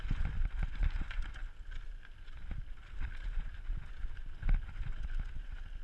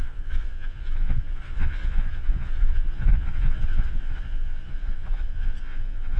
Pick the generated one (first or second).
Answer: second